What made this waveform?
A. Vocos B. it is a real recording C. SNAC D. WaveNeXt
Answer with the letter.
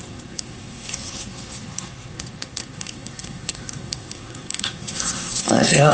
C